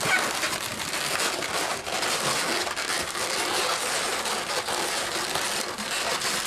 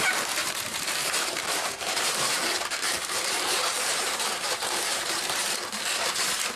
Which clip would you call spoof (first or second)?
second